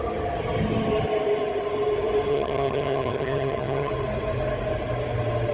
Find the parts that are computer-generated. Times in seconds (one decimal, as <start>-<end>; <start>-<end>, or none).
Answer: 2.3-3.9